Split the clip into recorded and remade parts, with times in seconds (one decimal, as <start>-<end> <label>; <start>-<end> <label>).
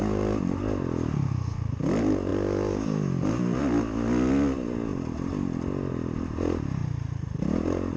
0.0-6.8 recorded; 6.8-7.4 remade; 7.4-8.0 recorded